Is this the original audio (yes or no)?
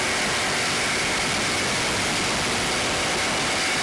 yes